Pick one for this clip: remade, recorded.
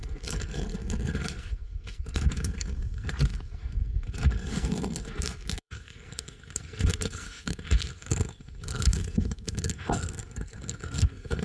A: remade